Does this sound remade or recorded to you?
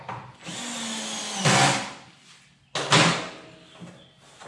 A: recorded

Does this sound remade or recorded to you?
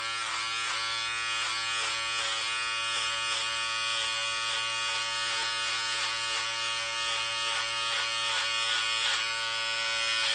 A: recorded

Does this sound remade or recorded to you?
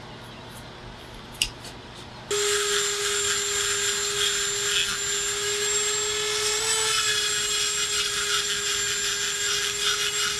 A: recorded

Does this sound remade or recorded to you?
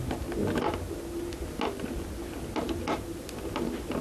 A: recorded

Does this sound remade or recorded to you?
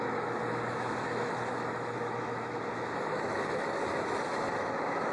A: remade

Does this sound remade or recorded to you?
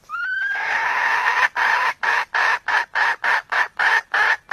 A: recorded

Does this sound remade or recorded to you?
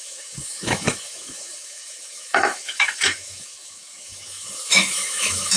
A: remade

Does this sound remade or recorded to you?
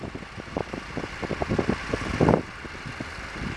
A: recorded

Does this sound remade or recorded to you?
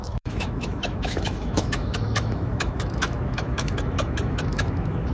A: remade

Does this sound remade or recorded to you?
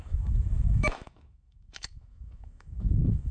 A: remade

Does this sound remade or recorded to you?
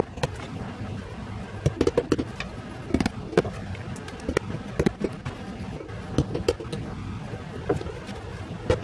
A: recorded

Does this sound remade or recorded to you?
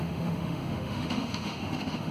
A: remade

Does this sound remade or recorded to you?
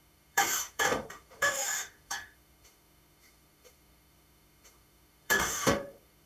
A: remade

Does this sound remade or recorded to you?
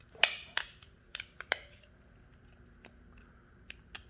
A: recorded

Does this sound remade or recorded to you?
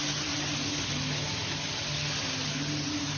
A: recorded